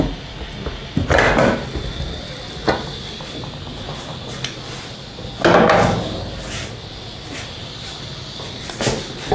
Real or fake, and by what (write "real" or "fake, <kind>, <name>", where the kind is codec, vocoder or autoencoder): real